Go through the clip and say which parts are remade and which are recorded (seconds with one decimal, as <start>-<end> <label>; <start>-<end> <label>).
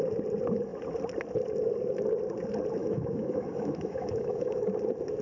0.0-2.8 recorded; 2.8-4.7 remade; 4.7-5.2 recorded